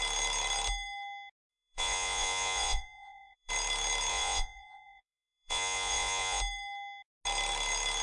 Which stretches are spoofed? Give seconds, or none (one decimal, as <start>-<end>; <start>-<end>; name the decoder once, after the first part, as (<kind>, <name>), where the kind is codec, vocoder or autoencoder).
1.5-3.5 (vocoder, Vocos); 4.1-6.4